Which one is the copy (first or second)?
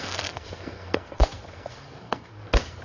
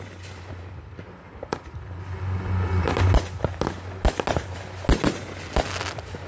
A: first